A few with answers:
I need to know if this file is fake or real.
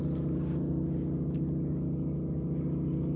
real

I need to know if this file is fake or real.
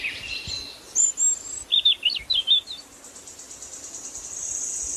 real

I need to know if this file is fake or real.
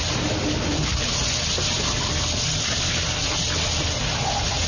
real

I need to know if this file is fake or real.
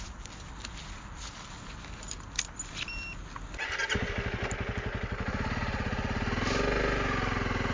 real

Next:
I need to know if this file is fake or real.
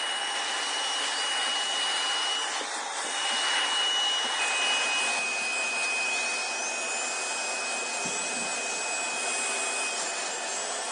real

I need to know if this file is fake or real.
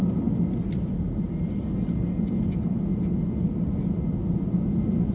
real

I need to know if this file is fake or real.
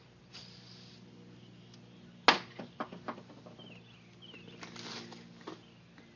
real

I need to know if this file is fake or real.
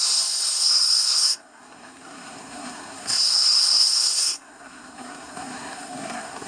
fake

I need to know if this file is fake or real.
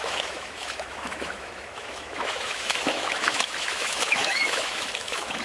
fake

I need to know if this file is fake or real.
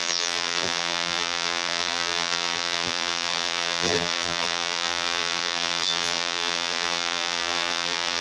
fake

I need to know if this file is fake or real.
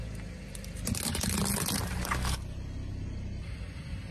real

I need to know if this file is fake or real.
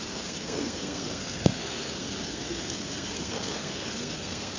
fake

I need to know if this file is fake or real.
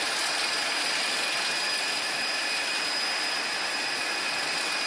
real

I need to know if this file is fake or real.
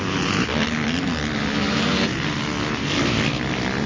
real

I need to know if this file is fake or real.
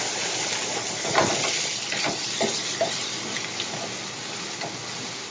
real